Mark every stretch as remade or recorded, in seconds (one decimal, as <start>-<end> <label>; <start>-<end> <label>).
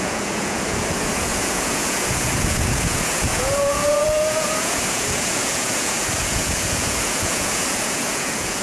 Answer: 0.0-8.6 remade